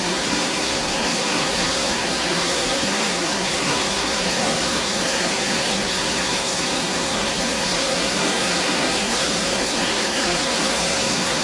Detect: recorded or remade remade